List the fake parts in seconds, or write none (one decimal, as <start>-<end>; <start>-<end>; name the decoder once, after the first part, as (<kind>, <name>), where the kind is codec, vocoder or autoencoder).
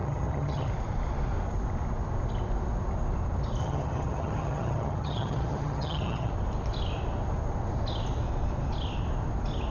0.0-0.7 (vocoder, HiFi-GAN); 3.6-6.3